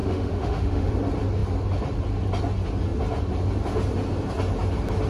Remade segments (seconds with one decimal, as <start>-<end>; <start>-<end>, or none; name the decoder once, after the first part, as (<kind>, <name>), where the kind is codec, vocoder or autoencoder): 0.0-0.9 (autoencoder, DAC-VAE)